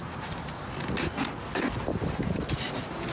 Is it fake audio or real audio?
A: real